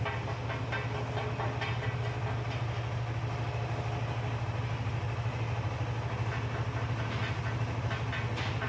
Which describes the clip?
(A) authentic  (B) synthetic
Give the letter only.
A